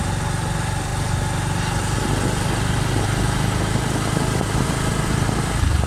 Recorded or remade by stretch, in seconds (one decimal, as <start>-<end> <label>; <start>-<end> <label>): 0.0-5.9 recorded